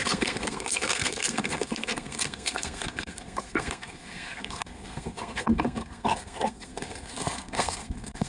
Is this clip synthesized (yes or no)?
yes